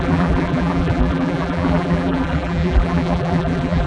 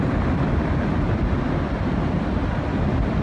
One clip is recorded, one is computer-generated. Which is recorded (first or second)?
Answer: second